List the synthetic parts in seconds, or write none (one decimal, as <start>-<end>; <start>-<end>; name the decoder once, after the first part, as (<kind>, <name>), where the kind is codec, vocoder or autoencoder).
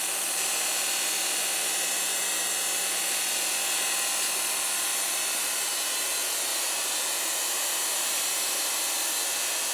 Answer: 4.9-5.7 (vocoder, BigVGAN v2); 6.5-7.3